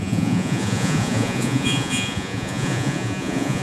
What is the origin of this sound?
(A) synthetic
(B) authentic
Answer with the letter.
A